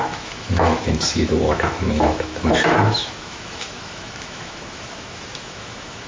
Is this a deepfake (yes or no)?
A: yes